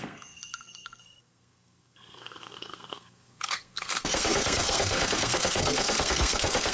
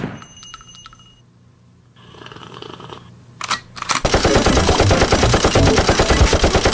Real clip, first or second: second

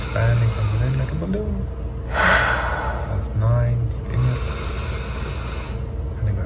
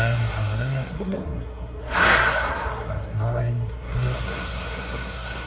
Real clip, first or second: first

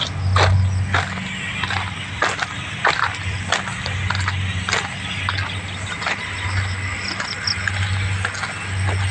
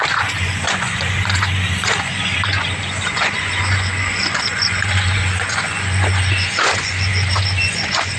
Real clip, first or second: first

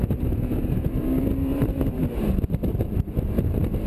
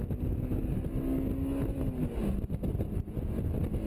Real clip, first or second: second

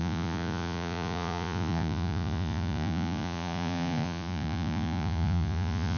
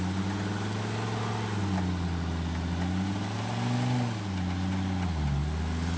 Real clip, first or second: second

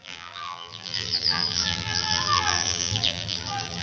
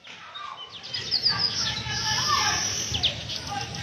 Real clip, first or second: second